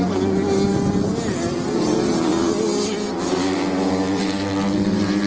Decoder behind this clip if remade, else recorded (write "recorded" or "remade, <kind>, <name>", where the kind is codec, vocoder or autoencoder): recorded